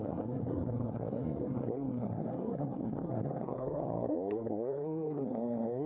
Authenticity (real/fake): fake